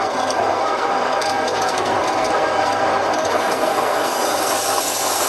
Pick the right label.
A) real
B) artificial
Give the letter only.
B